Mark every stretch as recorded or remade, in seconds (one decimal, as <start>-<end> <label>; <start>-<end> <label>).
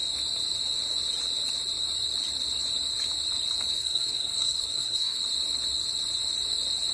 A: 0.0-3.8 recorded; 3.8-5.2 remade; 5.2-6.9 recorded